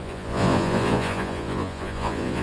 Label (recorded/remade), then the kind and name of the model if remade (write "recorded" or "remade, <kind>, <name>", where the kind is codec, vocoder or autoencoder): remade, vocoder, Vocos